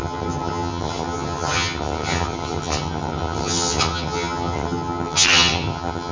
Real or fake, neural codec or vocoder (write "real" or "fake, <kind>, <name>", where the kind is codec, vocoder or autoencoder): fake, vocoder, HiFi-GAN